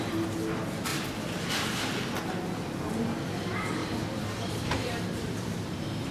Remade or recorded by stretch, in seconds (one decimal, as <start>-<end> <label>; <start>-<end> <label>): 0.0-3.8 recorded; 3.8-6.1 remade